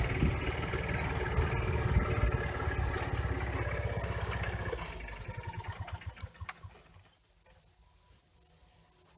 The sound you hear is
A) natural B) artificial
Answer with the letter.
A